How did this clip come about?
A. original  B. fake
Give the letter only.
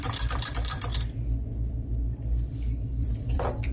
B